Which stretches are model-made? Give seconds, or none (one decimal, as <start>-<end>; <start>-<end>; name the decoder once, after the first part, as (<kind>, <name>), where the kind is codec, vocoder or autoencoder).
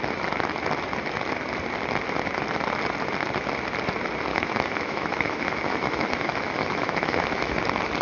4.3-7.6 (autoencoder, DAC-VAE)